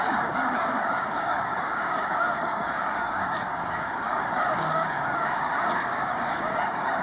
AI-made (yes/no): yes